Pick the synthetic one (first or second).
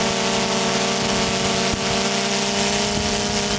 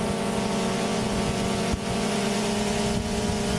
second